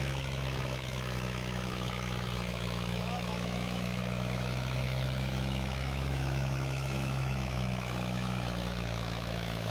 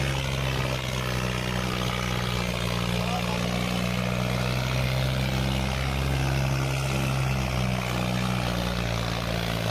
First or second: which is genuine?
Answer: second